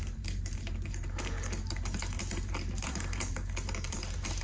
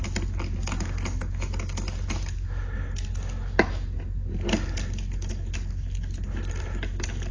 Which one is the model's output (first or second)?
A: first